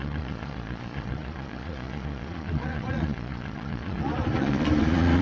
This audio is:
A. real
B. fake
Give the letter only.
B